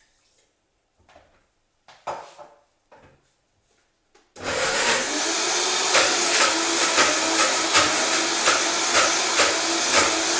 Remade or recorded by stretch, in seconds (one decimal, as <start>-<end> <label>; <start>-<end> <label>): 0.0-5.9 recorded; 5.9-6.5 remade; 6.5-10.4 recorded